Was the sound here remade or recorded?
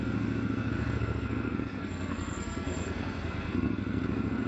remade